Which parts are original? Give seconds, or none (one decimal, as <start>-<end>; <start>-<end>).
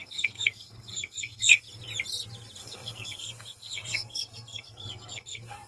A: 1.6-2.6